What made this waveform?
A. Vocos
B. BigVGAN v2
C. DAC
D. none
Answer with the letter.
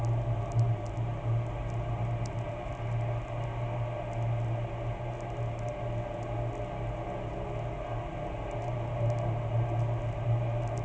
D